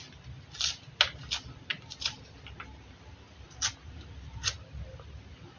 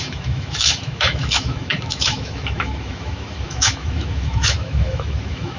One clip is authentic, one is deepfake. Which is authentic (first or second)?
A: first